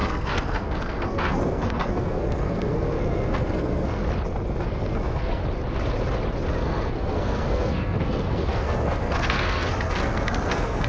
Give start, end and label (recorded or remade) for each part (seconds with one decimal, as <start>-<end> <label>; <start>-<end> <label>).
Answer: 0.0-4.0 remade; 4.0-4.6 recorded; 4.6-5.4 remade; 5.4-6.5 recorded; 6.5-10.9 remade